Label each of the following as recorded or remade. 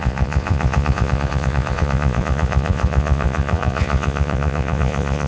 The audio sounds remade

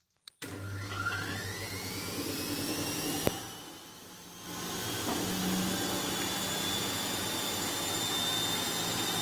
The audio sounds recorded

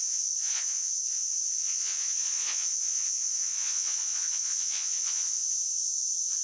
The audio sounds remade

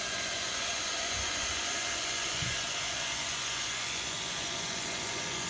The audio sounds remade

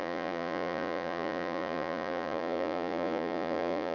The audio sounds remade